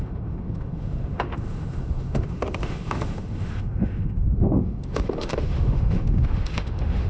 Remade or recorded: remade